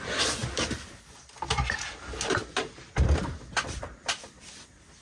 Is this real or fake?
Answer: real